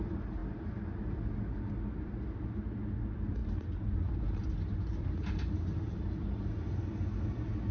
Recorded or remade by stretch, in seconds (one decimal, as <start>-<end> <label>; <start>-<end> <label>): 0.0-7.7 recorded